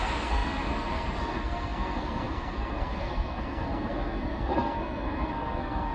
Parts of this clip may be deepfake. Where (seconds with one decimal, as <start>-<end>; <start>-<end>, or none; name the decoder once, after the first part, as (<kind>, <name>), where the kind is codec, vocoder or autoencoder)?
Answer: 0.0-5.9 (codec, SNAC)